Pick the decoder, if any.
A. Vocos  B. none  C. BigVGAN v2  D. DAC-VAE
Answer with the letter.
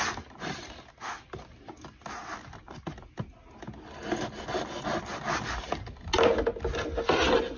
B